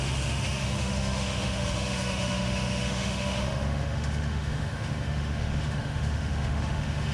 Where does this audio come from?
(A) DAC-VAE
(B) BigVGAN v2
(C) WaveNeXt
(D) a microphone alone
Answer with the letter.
A